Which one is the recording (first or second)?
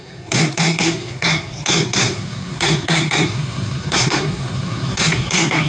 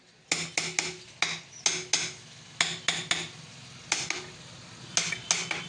second